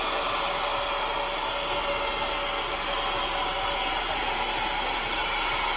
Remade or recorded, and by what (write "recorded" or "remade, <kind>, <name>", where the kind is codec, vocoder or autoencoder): recorded